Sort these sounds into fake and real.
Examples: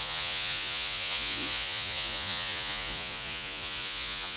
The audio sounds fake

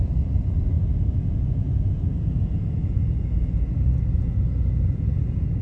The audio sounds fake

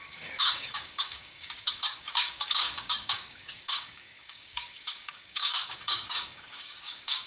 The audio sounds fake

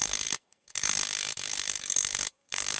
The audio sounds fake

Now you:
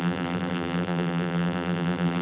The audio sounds fake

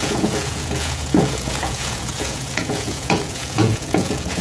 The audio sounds fake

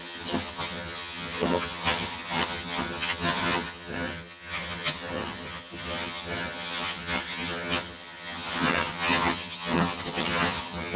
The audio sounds fake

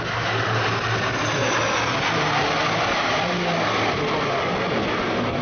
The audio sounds real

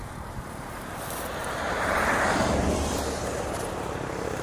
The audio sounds fake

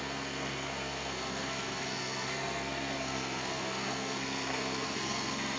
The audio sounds fake